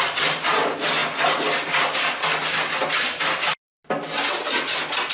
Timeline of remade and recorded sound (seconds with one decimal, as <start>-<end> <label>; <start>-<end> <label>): 0.0-5.1 recorded

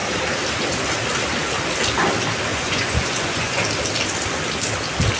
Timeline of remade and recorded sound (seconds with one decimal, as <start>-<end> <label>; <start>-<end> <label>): 0.0-2.5 recorded; 2.5-3.6 remade; 3.6-5.2 recorded

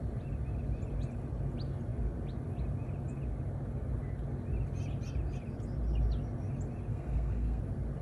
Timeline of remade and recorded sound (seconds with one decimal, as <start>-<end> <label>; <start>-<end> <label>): 0.0-6.9 recorded; 6.9-7.6 remade; 7.6-8.0 recorded

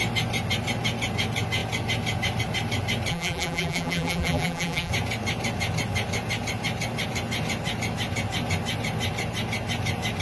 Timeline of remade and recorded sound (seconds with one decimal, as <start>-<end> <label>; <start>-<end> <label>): 0.0-3.1 recorded; 3.1-4.9 remade; 4.9-10.2 recorded

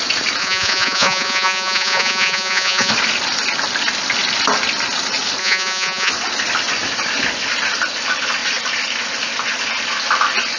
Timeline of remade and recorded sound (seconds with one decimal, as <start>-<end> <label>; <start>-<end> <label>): 0.0-0.4 recorded; 0.4-2.9 remade; 2.9-5.4 recorded; 5.4-6.1 remade; 6.1-10.6 recorded

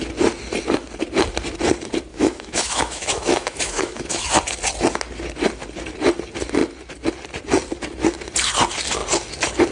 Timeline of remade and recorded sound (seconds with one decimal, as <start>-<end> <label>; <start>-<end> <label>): 0.0-2.1 recorded; 2.1-4.3 remade; 4.3-9.7 recorded

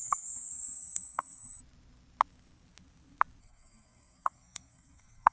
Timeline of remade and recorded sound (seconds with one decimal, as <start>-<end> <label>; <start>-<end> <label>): 0.0-1.6 remade; 1.6-3.4 recorded; 3.4-5.3 remade